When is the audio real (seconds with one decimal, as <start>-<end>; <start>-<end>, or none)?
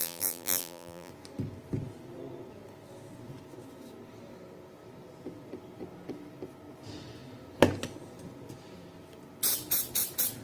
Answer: 1.1-10.4